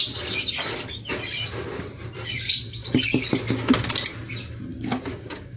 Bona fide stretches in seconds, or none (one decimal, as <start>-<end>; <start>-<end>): 0.0-4.7